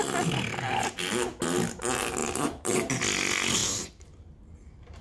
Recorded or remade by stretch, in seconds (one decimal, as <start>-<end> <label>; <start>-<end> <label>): 0.0-2.2 recorded; 2.2-2.9 remade; 2.9-3.6 recorded; 3.6-4.3 remade; 4.3-5.0 recorded